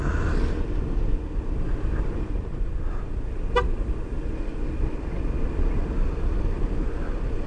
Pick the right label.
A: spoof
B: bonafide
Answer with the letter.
B